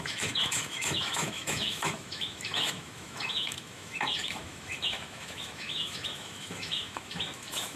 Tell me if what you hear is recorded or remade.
remade